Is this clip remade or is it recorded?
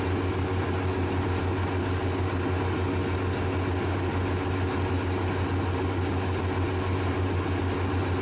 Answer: recorded